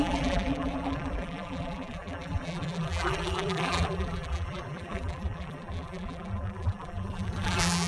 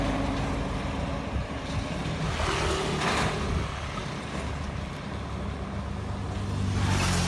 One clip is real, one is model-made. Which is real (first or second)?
second